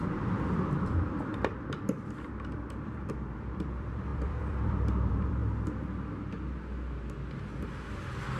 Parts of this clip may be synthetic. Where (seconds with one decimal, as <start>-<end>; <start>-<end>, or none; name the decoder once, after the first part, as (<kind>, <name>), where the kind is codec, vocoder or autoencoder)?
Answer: 0.0-5.4 (vocoder, BigVGAN v2); 7.6-8.4